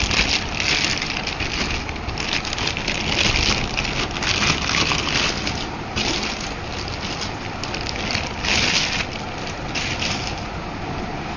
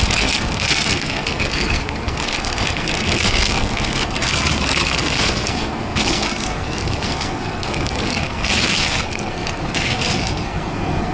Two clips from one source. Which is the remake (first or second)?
second